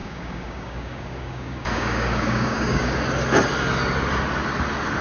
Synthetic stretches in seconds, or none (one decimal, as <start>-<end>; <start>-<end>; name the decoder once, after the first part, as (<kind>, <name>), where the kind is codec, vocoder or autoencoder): 0.0-3.0 (codec, DAC)